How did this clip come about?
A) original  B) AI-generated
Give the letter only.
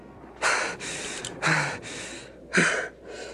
A